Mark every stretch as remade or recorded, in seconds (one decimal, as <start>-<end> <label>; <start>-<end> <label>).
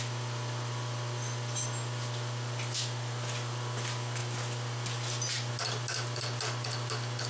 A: 0.0-7.3 recorded